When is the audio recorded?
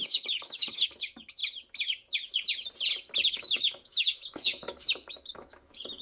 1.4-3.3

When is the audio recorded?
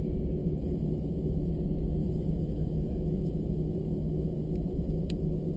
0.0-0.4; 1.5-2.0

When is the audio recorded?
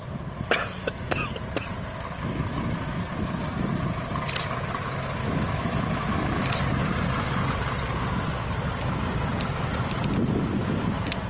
0.0-5.2; 6.6-11.3